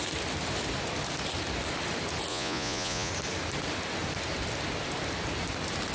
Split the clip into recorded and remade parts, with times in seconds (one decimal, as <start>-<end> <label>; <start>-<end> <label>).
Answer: 0.0-2.3 recorded; 2.3-3.1 remade; 3.1-5.9 recorded